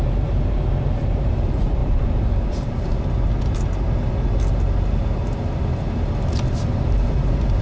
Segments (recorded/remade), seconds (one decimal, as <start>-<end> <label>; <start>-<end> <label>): 0.0-1.8 remade; 1.8-2.5 recorded; 2.5-2.9 remade; 2.9-6.5 recorded; 6.5-7.6 remade